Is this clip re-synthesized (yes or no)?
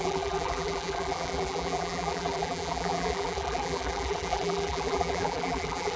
yes